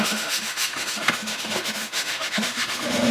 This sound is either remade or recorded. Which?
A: remade